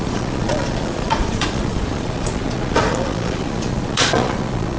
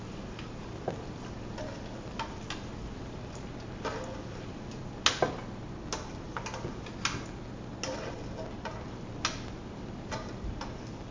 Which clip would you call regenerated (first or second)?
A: first